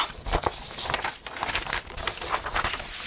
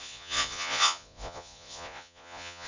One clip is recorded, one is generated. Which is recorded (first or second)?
first